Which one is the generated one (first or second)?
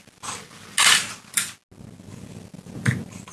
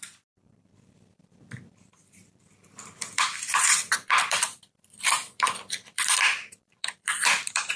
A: second